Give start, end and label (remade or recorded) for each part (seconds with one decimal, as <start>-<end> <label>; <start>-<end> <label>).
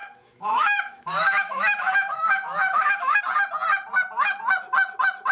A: 0.0-3.2 remade; 3.2-5.3 recorded